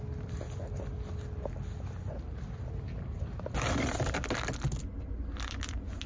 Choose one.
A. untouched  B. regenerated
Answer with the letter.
A